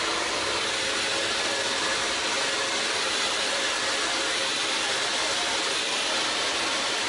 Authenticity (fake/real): real